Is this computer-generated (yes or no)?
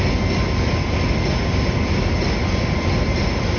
no